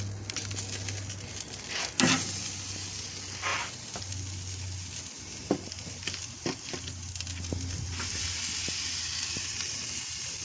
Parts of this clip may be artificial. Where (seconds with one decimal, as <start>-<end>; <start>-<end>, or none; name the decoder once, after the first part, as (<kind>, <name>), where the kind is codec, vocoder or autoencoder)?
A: none